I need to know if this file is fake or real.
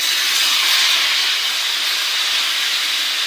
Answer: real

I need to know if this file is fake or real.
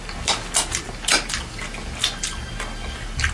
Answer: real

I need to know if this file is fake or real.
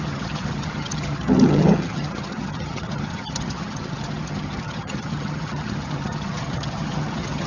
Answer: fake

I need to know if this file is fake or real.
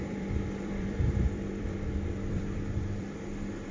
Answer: fake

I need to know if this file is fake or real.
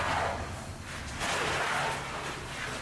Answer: real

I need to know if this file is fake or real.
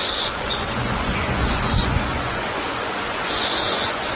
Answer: fake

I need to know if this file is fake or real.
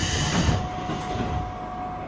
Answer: real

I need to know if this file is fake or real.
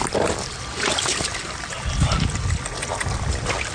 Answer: real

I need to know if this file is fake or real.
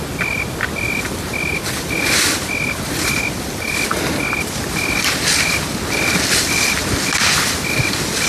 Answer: real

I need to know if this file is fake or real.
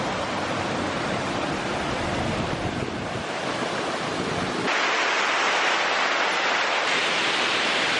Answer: real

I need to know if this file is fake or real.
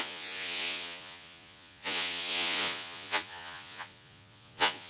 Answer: fake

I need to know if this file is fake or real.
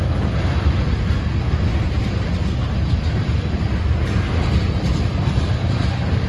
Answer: real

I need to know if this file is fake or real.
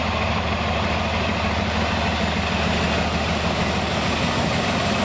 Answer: real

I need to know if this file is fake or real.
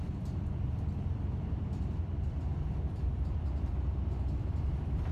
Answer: fake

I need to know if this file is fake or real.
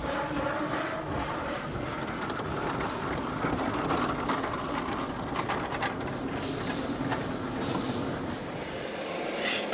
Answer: real